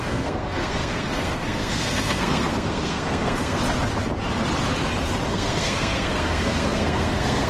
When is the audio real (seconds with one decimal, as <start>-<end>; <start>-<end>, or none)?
3.6-5.3